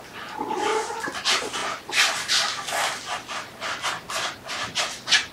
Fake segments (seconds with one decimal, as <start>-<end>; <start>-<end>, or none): none